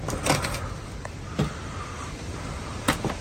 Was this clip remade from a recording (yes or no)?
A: no